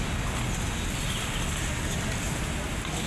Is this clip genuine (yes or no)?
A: yes